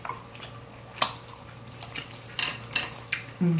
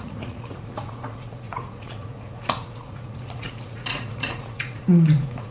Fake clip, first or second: second